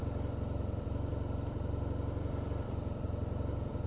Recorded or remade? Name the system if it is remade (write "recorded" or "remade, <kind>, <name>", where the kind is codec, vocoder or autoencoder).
remade, vocoder, BigVGAN v2